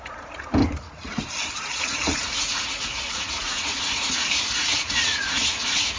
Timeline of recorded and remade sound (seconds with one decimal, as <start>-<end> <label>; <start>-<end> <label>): 0.0-0.6 remade; 0.6-1.8 recorded; 1.8-6.0 remade